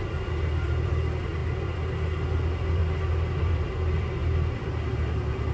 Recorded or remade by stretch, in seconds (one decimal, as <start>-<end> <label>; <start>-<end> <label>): 0.0-2.8 remade; 2.8-3.4 recorded; 3.4-5.5 remade